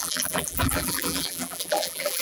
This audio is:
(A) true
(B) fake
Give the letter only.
B